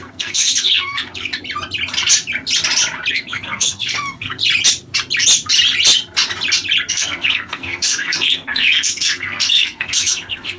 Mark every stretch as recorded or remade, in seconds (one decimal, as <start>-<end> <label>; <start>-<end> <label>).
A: 0.0-1.3 remade; 1.3-3.1 recorded; 3.1-4.4 remade; 4.4-6.9 recorded; 6.9-10.6 remade